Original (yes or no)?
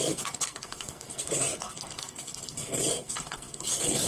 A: no